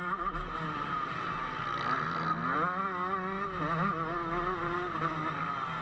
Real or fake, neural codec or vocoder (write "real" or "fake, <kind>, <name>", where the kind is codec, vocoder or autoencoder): real